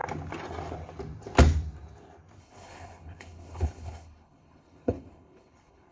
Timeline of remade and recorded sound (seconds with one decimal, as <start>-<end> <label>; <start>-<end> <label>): 0.0-2.4 recorded; 2.4-5.9 remade